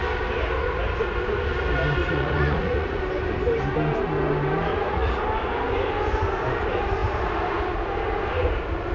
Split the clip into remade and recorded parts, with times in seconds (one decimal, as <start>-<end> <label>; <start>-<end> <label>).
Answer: 0.0-2.0 recorded; 2.0-3.0 remade; 3.0-4.7 recorded; 4.7-5.2 remade; 5.2-8.9 recorded